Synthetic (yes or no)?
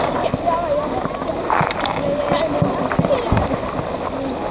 no